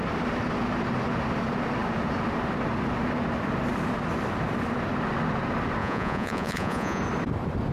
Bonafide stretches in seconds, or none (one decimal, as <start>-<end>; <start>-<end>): 0.0-5.8; 7.0-7.7